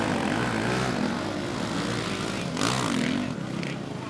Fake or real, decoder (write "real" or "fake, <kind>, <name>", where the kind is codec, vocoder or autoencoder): real